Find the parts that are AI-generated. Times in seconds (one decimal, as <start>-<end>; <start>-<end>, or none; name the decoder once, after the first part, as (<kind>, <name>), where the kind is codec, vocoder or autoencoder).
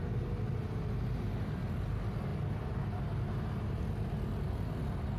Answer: none